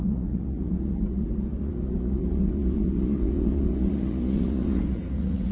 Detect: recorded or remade remade